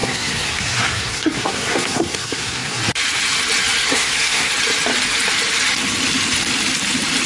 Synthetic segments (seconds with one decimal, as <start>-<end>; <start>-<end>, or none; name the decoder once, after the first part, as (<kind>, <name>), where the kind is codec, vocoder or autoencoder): 0.0-2.8 (codec, SNAC); 3.9-4.5